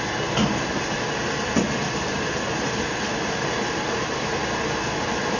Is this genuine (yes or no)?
yes